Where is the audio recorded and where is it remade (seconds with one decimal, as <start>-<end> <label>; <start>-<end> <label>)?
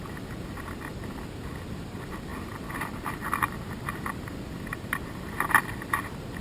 0.0-2.3 recorded; 2.3-5.5 remade; 5.5-6.4 recorded